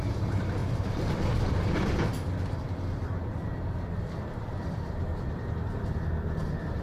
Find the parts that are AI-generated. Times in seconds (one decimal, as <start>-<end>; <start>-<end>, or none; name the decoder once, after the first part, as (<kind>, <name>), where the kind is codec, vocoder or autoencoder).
0.0-6.8 (vocoder, BigVGAN v2)